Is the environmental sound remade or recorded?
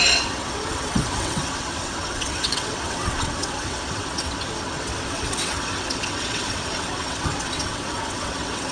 remade